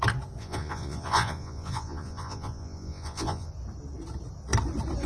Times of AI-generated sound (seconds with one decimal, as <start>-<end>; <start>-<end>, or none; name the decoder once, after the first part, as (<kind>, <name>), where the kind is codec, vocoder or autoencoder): 0.4-3.5 (vocoder, Vocos)